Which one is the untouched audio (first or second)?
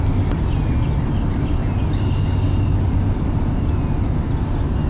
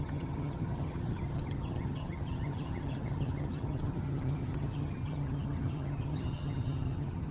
first